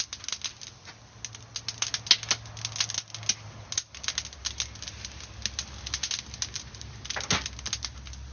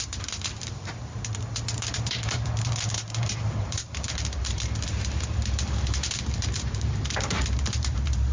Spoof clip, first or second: second